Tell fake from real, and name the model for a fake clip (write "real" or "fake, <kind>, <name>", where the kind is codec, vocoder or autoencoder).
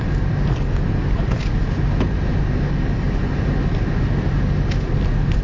real